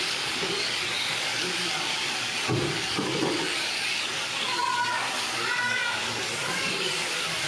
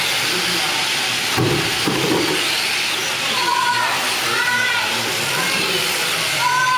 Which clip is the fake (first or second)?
first